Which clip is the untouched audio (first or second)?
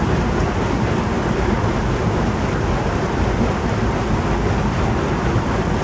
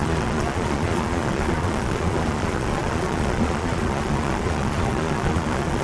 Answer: first